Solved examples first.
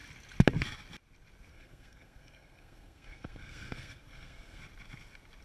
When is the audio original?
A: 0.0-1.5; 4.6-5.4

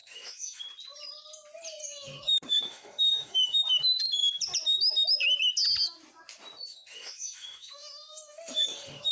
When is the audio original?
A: 0.6-1.8; 3.6-6.7